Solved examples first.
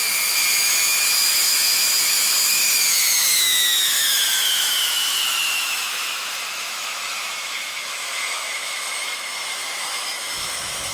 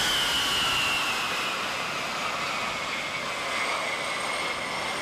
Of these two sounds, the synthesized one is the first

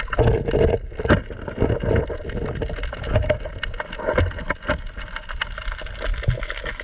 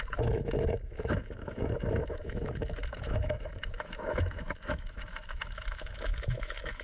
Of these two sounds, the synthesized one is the second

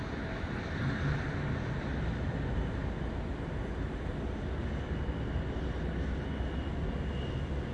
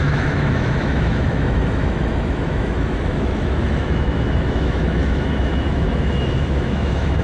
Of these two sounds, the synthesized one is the second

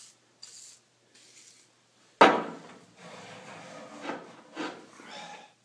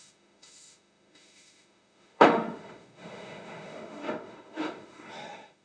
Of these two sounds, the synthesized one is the second